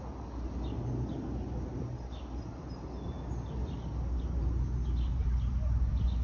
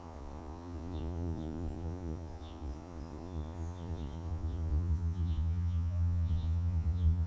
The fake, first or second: second